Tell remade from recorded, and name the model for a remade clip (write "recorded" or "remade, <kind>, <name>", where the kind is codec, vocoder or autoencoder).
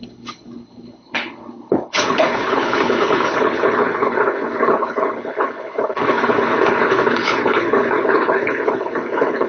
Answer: remade, codec, HILCodec